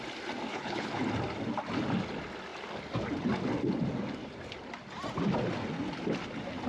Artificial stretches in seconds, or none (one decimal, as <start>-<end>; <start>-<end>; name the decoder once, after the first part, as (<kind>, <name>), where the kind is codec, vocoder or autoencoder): 0.5-1.0 (codec, HILCodec)